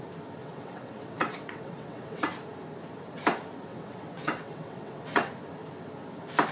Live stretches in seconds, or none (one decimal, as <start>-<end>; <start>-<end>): 0.0-0.4; 2.2-3.7; 5.3-6.5